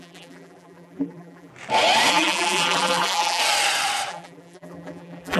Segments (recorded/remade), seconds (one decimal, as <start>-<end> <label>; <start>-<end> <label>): 0.0-1.5 remade; 1.5-2.1 recorded; 2.1-3.4 remade; 3.4-4.1 recorded; 4.1-5.4 remade